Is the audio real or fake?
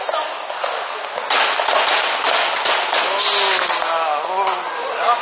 real